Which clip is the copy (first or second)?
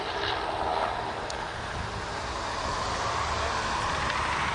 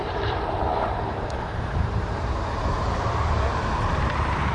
second